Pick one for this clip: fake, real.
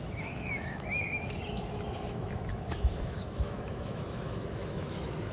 fake